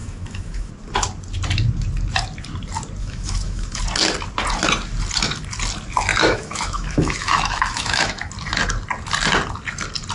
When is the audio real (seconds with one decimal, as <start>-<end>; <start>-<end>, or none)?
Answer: 0.7-3.0; 3.8-6.1; 8.3-10.1